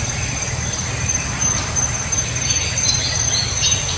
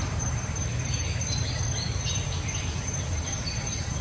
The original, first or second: first